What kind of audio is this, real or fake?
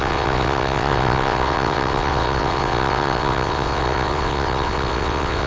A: fake